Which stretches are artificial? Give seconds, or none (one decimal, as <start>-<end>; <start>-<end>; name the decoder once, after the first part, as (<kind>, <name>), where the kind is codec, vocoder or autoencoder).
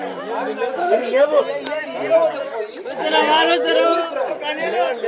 0.8-1.4 (codec, SNAC)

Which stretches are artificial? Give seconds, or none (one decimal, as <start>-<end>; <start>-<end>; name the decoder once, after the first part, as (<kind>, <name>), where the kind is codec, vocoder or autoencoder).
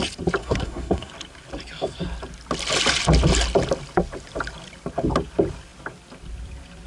0.4-1.1 (codec, SNAC)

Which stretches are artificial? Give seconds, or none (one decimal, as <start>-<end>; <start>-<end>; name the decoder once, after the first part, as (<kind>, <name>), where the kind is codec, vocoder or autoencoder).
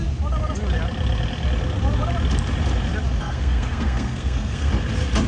3.2-4.7 (codec, SNAC)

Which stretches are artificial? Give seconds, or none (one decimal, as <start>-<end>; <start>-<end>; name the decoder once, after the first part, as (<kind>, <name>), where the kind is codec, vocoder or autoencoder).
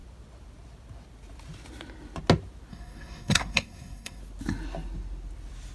2.7-4.2 (codec, SNAC)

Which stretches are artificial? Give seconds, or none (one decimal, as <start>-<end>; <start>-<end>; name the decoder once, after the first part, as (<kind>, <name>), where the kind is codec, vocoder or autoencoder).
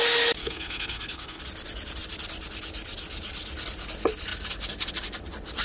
0.4-1.4 (codec, SNAC)